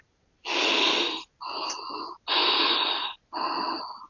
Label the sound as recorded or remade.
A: recorded